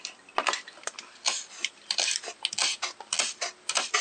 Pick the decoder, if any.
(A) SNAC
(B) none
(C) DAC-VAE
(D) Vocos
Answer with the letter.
B